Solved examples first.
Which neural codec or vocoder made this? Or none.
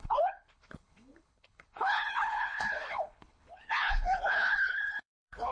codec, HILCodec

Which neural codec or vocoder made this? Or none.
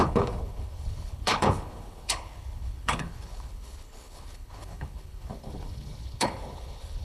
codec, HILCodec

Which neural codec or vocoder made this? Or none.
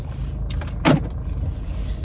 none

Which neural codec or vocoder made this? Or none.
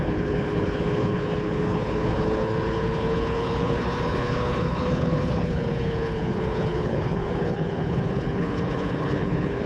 codec, HILCodec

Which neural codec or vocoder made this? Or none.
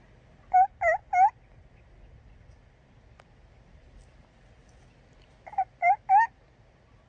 none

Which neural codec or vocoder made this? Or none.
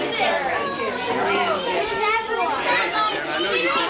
none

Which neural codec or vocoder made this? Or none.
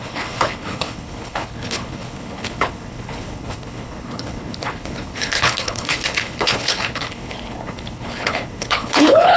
codec, HILCodec